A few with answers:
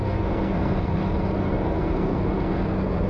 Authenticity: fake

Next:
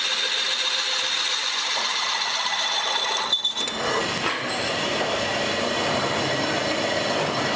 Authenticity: real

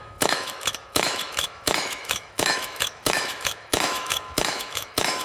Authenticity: fake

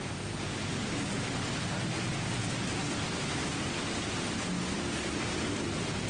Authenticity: real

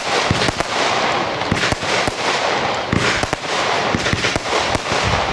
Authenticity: real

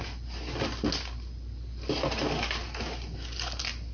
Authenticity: real